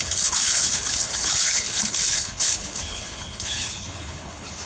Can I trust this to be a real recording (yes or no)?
no